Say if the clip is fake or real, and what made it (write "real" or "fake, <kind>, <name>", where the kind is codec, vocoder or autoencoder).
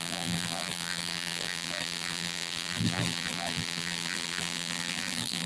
fake, vocoder, BigVGAN v2